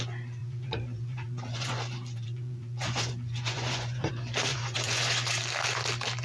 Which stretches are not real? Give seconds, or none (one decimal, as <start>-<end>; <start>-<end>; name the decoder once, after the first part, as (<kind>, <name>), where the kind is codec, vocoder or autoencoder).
0.4-4.1 (vocoder, Vocos); 4.5-5.4